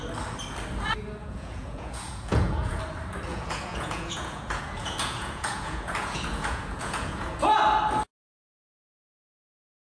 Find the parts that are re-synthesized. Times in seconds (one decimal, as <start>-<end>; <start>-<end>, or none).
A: 1.2-2.8; 3.3-7.6